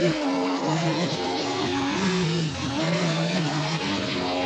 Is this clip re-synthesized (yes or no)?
yes